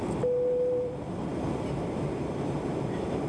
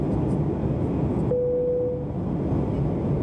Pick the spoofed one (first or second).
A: first